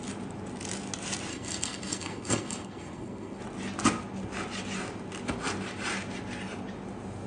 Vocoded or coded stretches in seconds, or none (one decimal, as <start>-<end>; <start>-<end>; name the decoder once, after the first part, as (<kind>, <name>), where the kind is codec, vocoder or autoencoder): 1.3-3.4 (codec, SNAC)